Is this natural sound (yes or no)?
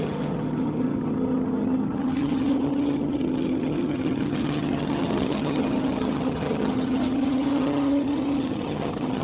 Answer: no